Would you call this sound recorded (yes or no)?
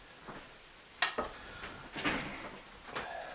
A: yes